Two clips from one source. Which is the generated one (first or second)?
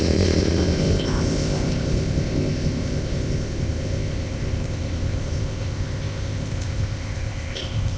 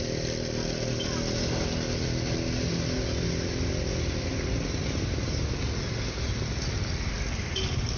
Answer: first